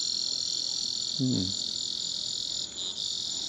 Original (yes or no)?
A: yes